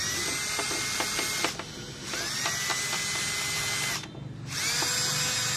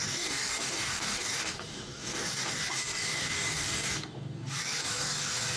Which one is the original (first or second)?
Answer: first